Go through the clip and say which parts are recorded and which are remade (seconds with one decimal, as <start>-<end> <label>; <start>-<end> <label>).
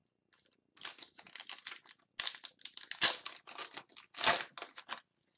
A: 0.0-5.4 recorded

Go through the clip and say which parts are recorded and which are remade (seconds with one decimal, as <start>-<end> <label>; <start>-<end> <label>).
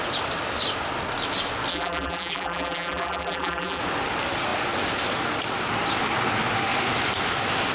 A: 0.0-1.7 recorded; 1.7-3.8 remade; 3.8-7.7 recorded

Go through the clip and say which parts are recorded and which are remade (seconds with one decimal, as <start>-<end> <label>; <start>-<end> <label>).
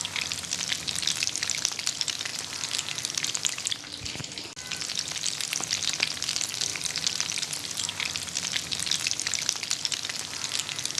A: 0.0-2.3 recorded; 2.3-3.6 remade; 3.6-6.7 recorded; 6.7-7.8 remade; 7.8-11.0 recorded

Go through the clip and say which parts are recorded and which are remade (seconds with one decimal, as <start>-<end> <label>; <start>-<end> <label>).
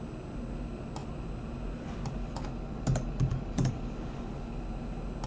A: 0.0-5.3 recorded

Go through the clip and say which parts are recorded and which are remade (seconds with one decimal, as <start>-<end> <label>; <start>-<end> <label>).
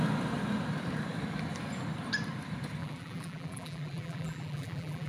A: 0.0-2.8 recorded; 2.8-5.1 remade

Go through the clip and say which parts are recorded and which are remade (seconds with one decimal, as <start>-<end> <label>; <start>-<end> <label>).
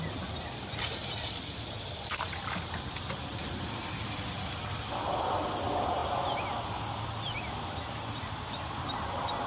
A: 0.0-9.5 recorded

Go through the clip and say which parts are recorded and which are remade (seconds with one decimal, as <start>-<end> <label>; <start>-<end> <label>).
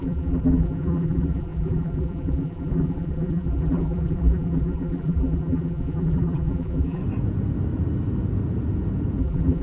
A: 0.0-7.0 remade; 7.0-9.2 recorded; 9.2-9.6 remade